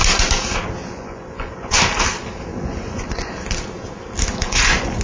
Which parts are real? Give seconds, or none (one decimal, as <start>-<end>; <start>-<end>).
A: 0.0-0.8; 1.8-2.5; 3.3-4.3